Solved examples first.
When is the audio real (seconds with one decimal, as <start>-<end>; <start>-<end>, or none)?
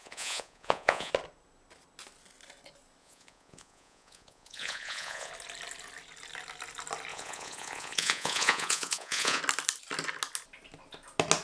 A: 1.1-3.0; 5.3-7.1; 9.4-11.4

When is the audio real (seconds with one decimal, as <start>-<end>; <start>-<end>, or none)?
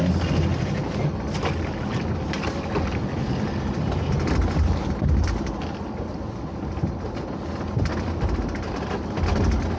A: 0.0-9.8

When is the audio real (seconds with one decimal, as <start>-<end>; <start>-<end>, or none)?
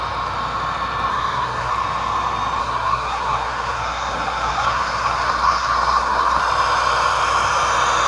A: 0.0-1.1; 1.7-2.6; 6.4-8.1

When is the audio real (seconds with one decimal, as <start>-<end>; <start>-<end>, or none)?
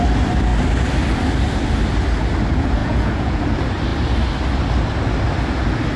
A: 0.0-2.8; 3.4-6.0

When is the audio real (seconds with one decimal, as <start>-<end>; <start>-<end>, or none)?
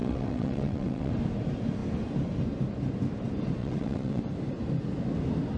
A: 1.1-3.6; 4.2-5.6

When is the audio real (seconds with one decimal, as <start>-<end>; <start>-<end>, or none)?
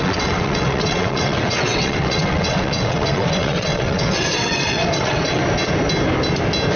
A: 5.4-6.8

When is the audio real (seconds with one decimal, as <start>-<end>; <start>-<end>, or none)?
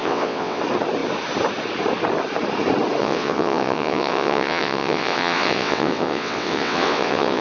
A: 0.6-3.0